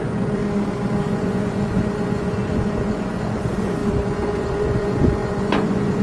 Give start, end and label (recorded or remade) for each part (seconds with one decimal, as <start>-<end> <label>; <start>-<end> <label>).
0.0-0.4 remade; 0.4-1.0 recorded; 1.0-6.0 remade